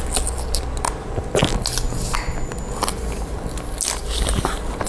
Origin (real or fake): real